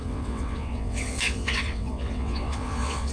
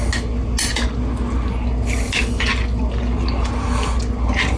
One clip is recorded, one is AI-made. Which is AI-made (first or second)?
first